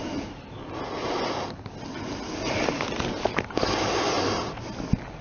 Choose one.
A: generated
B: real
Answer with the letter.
B